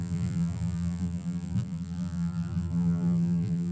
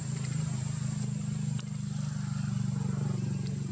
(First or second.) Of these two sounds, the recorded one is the second